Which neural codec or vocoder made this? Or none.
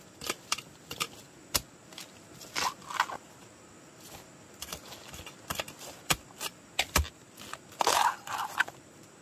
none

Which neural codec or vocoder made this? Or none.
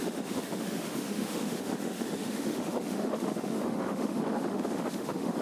autoencoder, DAC-VAE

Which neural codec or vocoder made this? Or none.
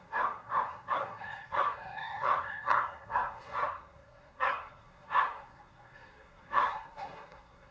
codec, SNAC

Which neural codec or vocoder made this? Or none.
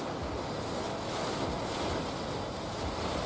none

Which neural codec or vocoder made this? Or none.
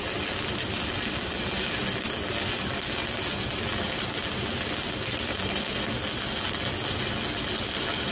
none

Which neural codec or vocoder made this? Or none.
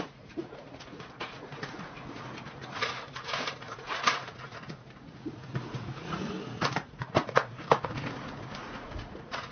vocoder, Vocos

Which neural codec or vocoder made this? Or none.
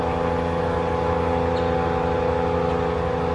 none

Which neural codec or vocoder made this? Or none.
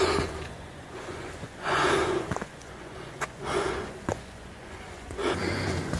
vocoder, Vocos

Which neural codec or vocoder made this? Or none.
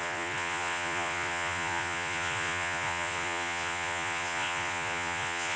vocoder, Vocos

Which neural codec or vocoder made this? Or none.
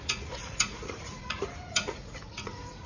vocoder, Vocos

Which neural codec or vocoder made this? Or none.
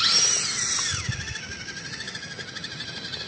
none